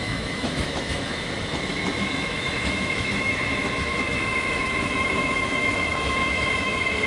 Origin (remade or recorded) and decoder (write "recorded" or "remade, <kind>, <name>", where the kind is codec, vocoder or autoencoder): remade, autoencoder, DAC-VAE